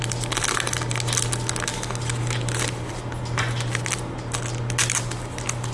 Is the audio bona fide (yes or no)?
yes